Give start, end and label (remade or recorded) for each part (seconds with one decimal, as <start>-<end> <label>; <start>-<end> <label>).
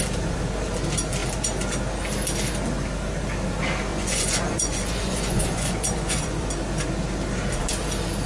0.0-3.9 recorded; 3.9-6.5 remade; 6.5-8.3 recorded